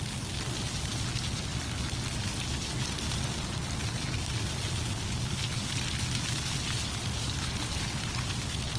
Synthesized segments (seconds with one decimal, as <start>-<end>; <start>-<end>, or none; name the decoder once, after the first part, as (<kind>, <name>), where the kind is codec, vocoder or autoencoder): none